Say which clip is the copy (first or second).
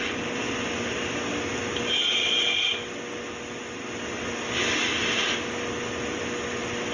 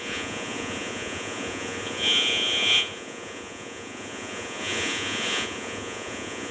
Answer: second